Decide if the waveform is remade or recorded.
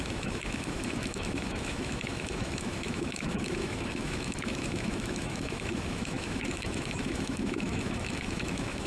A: remade